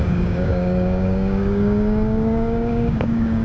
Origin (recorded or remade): remade